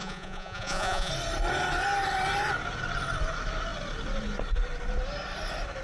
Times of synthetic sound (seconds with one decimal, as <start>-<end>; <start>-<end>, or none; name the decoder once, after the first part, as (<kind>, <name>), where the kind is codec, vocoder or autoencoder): 0.0-1.1 (vocoder, Vocos)